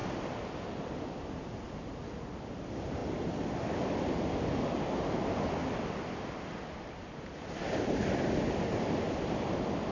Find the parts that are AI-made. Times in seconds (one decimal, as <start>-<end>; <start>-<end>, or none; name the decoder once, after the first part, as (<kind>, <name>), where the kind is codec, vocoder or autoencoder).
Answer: none